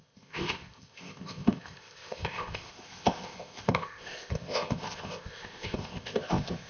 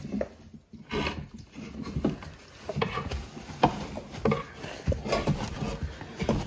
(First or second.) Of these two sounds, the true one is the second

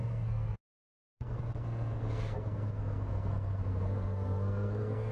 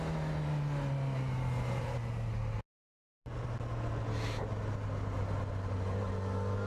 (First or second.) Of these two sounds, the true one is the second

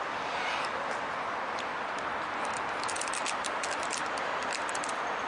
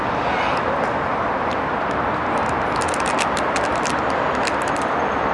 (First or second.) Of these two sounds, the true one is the second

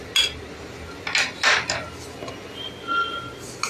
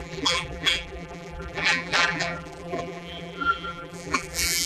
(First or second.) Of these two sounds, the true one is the first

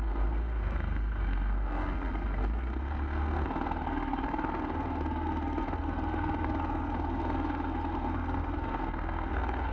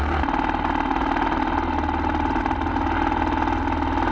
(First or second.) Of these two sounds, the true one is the second